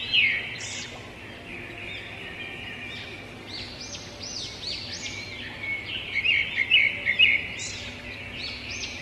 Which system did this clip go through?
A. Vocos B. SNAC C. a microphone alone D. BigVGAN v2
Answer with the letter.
C